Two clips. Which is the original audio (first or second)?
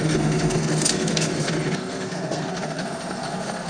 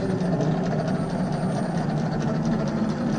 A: second